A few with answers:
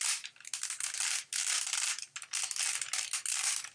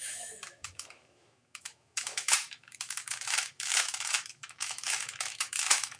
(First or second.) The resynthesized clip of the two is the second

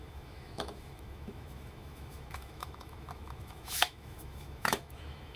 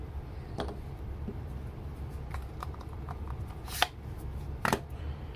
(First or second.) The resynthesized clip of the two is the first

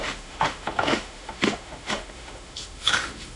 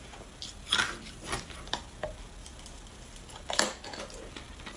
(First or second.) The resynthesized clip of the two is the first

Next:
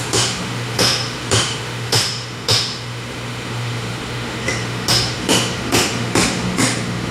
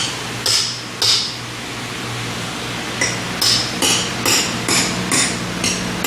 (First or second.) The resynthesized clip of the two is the first